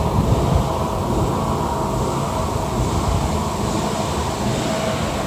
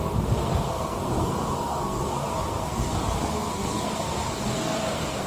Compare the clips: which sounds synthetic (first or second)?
second